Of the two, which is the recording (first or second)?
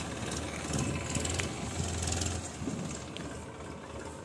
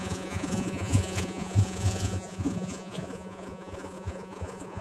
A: first